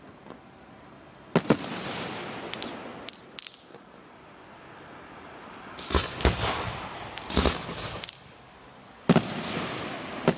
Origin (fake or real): real